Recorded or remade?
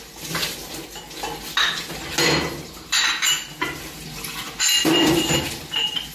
recorded